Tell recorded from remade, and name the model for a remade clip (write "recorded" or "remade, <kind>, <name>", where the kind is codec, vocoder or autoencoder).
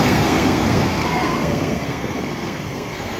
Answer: remade, codec, SNAC